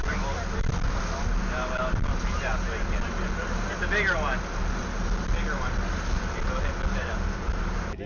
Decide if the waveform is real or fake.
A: real